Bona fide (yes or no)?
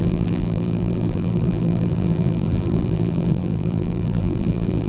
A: no